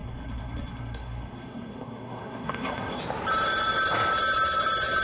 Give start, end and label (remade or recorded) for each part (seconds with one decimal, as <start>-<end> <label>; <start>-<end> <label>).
0.0-3.0 remade; 3.0-5.0 recorded